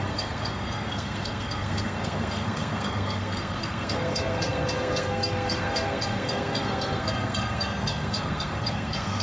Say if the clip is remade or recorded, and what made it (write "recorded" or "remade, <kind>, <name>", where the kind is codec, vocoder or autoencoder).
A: remade, codec, SNAC